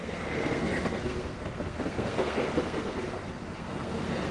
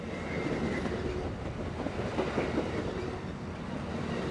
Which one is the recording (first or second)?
second